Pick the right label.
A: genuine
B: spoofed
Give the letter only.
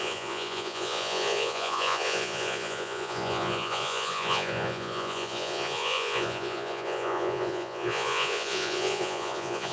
B